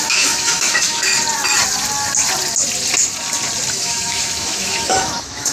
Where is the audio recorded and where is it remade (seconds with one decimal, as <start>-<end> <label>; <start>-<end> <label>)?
0.0-1.1 remade; 1.1-3.7 recorded; 3.7-5.5 remade